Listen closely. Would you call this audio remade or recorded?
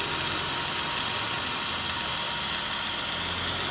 recorded